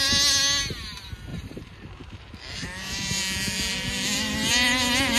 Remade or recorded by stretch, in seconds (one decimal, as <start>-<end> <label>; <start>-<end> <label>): 0.0-1.3 recorded; 1.3-3.2 remade; 3.2-5.2 recorded